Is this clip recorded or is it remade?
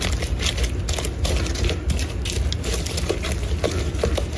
recorded